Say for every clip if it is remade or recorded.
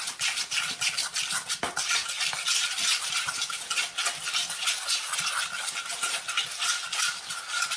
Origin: recorded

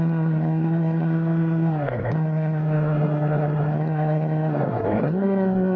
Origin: remade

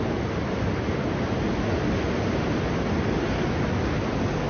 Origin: recorded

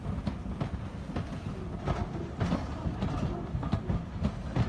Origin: recorded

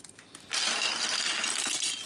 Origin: recorded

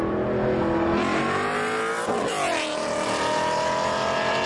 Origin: recorded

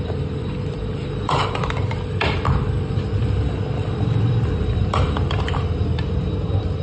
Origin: remade